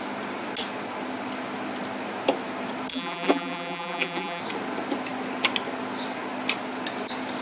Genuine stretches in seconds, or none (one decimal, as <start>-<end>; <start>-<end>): 0.0-2.9; 4.4-7.4